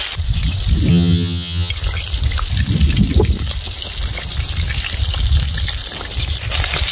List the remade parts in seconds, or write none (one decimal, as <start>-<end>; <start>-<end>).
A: 0.9-1.7